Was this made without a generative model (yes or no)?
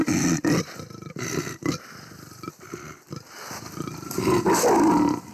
yes